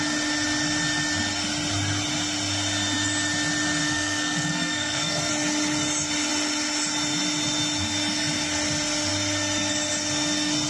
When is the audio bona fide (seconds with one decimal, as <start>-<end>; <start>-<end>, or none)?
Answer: 0.0-3.8; 5.3-10.7